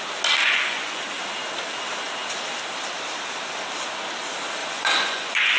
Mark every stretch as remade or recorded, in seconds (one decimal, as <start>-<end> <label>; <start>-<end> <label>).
0.0-0.4 recorded; 0.4-1.0 remade; 1.0-4.6 recorded; 4.6-5.6 remade